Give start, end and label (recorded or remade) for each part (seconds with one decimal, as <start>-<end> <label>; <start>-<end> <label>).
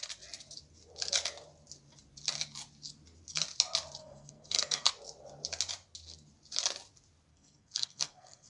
0.0-4.0 recorded; 4.0-4.9 remade; 4.9-7.3 recorded; 7.3-8.5 remade